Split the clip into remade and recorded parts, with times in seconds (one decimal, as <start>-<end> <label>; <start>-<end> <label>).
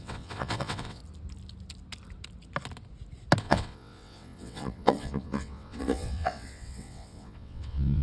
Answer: 0.0-1.0 remade; 1.0-3.4 recorded; 3.4-8.0 remade